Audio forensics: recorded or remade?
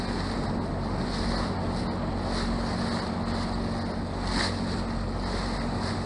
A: recorded